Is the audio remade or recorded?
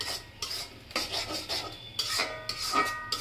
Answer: recorded